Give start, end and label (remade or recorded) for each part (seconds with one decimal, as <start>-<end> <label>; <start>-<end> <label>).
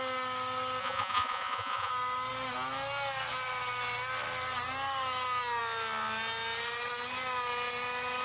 0.0-0.8 recorded; 0.8-1.9 remade; 1.9-8.2 recorded